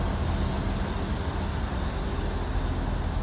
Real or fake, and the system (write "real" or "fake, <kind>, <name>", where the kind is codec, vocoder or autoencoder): real